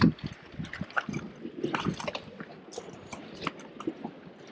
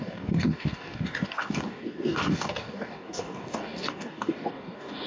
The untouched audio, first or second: first